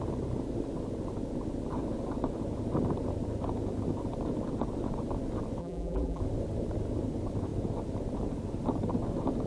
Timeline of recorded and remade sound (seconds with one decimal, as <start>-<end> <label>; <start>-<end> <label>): 0.0-5.6 recorded; 5.6-6.2 remade; 6.2-9.5 recorded